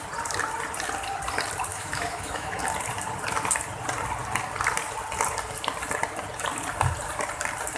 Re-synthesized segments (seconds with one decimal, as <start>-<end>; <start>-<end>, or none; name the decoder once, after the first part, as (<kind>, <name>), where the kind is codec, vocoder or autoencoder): 1.7-2.6 (autoencoder, DAC-VAE)